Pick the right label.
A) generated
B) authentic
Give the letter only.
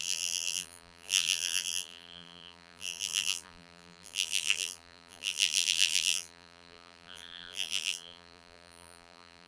A